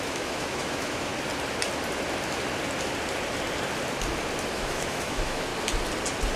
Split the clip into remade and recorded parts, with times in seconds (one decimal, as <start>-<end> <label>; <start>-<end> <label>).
0.0-1.1 remade; 1.1-4.5 recorded; 4.5-5.5 remade; 5.5-6.4 recorded